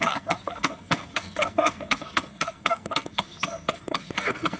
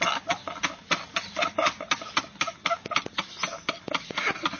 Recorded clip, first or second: second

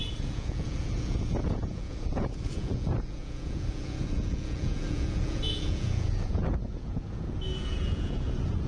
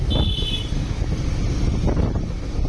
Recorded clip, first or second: second